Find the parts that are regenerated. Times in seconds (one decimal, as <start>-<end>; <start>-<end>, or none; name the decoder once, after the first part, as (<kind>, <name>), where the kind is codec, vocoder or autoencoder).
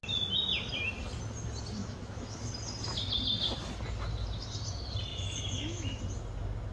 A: 1.8-2.5 (autoencoder, DAC-VAE); 5.1-6.0